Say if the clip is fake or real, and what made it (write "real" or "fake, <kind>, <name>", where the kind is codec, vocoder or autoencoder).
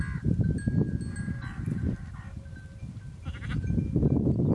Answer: real